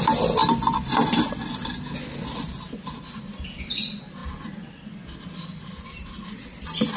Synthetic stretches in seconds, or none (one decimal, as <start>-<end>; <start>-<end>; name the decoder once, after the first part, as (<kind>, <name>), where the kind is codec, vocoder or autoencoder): 4.2-4.9 (vocoder, BigVGAN v2)